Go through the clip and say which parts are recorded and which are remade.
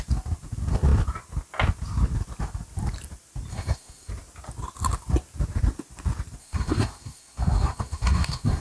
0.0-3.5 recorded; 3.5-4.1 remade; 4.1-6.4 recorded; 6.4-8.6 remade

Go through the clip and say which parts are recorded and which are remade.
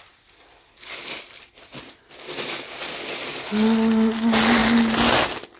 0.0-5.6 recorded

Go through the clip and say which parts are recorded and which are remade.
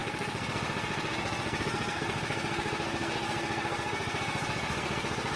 0.0-5.4 remade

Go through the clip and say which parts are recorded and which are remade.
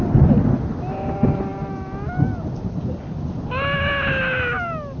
0.0-5.0 recorded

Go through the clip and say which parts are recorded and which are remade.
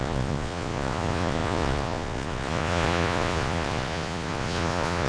0.0-5.1 remade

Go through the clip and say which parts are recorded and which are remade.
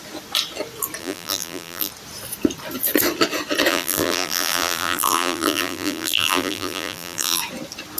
0.0-1.0 recorded; 1.0-1.9 remade; 1.9-3.7 recorded; 3.7-7.4 remade; 7.4-8.0 recorded